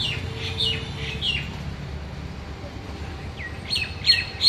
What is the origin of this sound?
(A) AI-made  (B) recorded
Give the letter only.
B